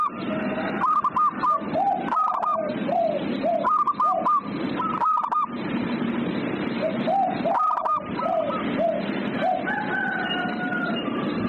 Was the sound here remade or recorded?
remade